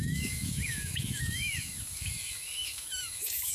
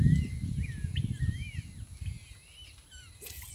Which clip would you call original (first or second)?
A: second